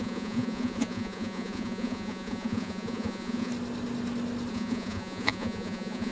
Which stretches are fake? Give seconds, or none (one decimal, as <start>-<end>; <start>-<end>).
0.0-3.5; 4.5-6.1